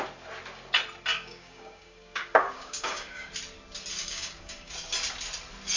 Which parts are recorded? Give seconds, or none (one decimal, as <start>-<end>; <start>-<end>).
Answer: 0.0-1.1; 3.3-4.0; 4.7-5.8